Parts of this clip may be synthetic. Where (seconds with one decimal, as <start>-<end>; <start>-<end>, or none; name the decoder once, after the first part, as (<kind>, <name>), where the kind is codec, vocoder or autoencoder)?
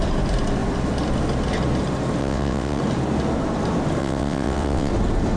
2.2-2.8 (vocoder, WaveNeXt); 4.0-4.9